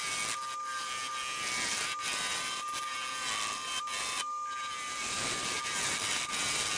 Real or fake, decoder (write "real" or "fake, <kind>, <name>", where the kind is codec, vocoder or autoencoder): real